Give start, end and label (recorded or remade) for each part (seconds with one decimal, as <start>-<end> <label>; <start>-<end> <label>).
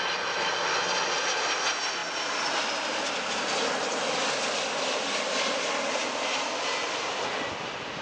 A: 0.0-8.0 recorded